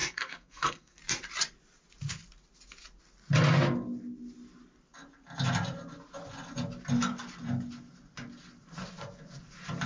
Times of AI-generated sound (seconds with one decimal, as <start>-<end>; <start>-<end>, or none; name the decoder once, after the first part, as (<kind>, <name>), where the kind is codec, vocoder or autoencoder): 0.0-1.0 (codec, SNAC)